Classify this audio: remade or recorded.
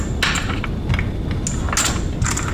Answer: recorded